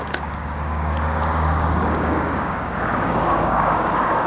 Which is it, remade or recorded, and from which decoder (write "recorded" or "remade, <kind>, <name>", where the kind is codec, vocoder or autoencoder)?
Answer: remade, codec, DAC